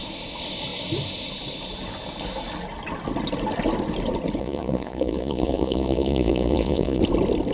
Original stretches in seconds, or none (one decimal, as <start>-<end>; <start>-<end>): 0.0-4.4; 7.0-7.5